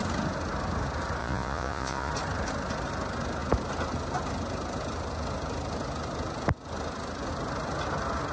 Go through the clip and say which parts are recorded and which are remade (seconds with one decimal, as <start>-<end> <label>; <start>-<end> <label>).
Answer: 0.0-1.2 recorded; 1.2-2.1 remade; 2.1-8.3 recorded